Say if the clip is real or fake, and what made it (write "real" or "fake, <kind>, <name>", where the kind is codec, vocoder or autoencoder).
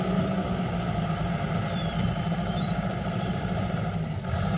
fake, vocoder, BigVGAN v2